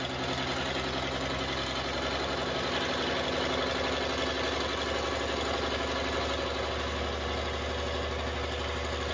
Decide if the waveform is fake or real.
real